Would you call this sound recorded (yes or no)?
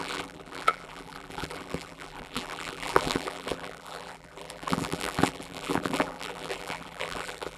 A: no